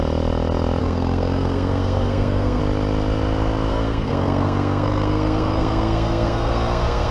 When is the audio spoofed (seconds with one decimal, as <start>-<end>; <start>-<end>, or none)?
0.8-2.6; 3.7-7.1